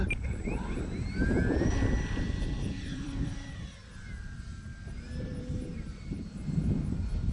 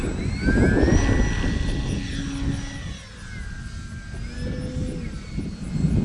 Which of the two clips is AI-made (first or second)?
first